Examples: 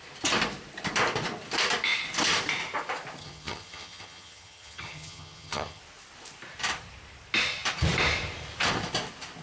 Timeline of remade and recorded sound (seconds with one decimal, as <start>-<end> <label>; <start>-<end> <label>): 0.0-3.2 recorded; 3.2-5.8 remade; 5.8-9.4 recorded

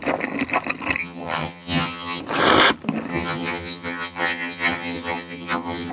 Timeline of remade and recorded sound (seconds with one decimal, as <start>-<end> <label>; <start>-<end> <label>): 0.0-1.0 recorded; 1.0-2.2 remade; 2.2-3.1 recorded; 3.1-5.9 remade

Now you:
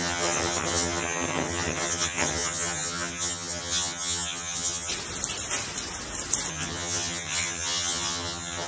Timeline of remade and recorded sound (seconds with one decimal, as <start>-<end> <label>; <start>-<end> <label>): 0.0-4.9 remade; 4.9-6.5 recorded; 6.5-8.7 remade

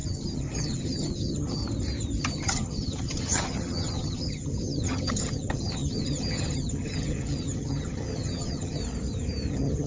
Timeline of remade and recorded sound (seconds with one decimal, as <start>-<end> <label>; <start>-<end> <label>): 0.0-1.6 remade; 1.6-2.2 recorded; 2.2-8.8 remade; 8.8-9.5 recorded; 9.5-9.9 remade